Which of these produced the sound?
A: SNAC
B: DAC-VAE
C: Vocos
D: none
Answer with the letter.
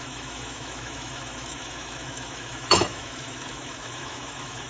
B